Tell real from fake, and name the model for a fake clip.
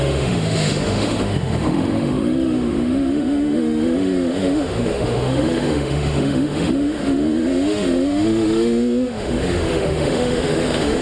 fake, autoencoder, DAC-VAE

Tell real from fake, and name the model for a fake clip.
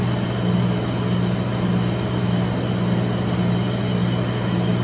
real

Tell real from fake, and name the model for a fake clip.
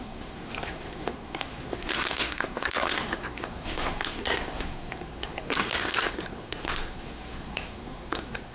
fake, codec, SNAC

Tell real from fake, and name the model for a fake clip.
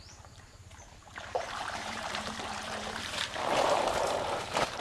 fake, vocoder, BigVGAN v2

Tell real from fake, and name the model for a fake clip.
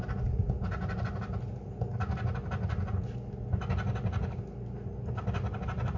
real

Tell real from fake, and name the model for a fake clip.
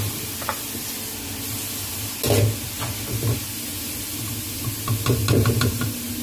real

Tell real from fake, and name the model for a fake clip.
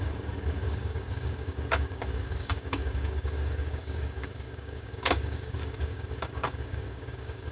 fake, codec, DAC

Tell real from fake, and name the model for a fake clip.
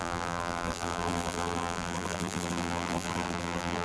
fake, vocoder, BigVGAN v2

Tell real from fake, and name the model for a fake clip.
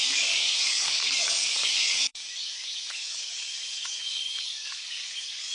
fake, codec, DAC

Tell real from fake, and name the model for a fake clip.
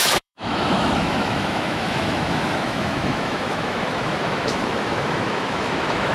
fake, autoencoder, DAC-VAE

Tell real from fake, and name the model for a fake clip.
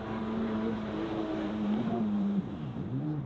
fake, vocoder, BigVGAN v2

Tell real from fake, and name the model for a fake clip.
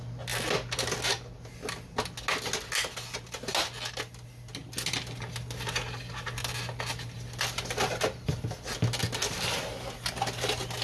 real